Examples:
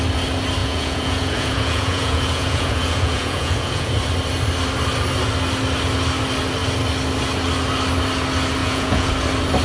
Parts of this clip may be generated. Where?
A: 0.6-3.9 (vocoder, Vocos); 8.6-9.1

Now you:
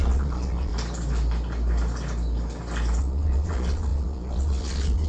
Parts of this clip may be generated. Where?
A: 0.0-0.7 (vocoder, Vocos); 3.0-5.1

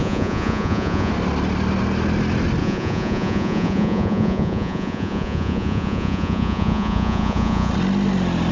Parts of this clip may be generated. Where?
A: 0.0-1.1 (vocoder, Vocos); 2.6-7.7

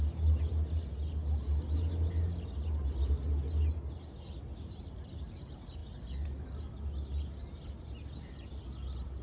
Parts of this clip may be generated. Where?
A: none